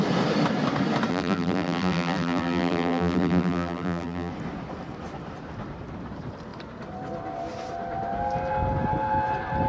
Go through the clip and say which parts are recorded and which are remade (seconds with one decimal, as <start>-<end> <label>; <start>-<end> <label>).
0.0-1.1 recorded; 1.1-4.3 remade; 4.3-9.7 recorded

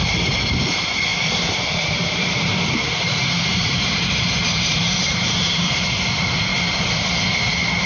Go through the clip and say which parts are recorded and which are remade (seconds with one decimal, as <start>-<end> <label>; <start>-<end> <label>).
0.0-6.5 remade; 6.5-7.9 recorded

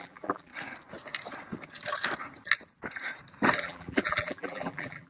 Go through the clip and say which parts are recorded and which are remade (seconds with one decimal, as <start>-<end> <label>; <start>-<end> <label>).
0.0-0.5 remade; 0.5-3.6 recorded; 3.6-5.1 remade

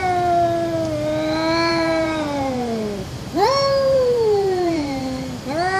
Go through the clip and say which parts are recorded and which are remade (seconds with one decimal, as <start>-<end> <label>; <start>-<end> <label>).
0.0-1.7 recorded; 1.7-5.0 remade; 5.0-5.8 recorded